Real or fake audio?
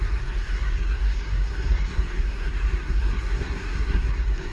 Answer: fake